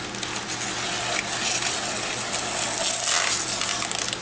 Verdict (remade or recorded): recorded